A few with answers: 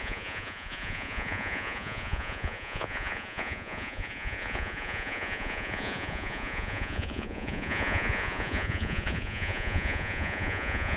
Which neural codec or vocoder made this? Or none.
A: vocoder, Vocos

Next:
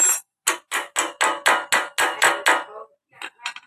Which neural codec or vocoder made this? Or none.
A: none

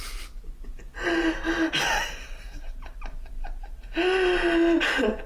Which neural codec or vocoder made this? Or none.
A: none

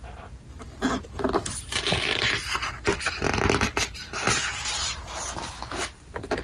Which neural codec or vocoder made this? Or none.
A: none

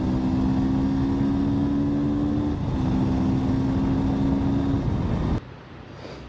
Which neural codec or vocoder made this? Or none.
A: none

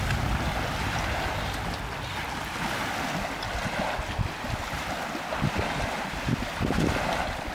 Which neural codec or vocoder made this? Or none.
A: none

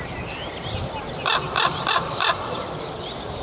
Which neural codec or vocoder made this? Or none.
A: none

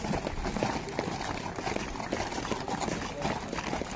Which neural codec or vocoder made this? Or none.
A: none